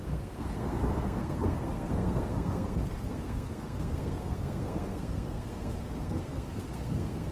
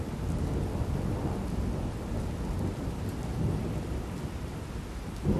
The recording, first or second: second